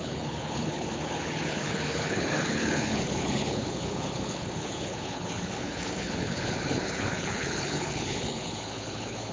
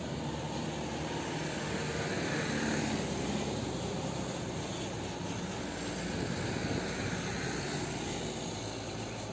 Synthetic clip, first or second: first